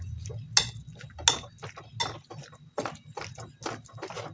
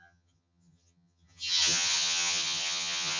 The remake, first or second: second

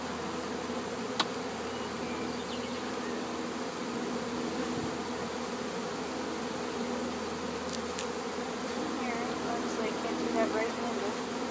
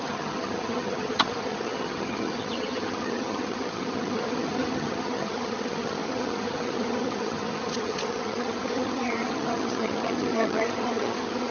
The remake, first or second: second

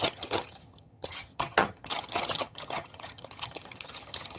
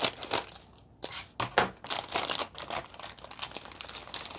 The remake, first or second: first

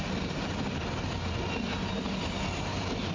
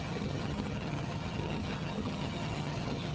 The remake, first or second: second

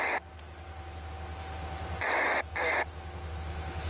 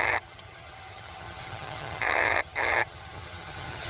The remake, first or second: second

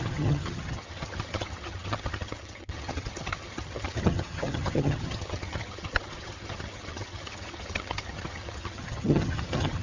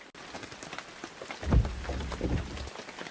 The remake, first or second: first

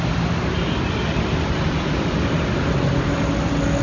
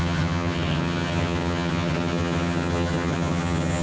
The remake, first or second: second